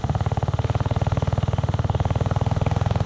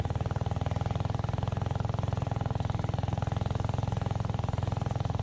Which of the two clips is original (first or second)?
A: second